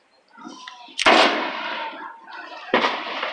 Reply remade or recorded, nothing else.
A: recorded